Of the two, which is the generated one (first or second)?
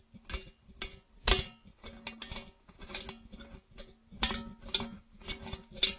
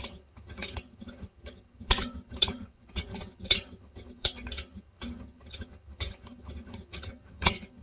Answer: second